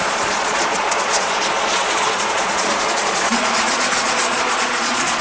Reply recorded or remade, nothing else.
remade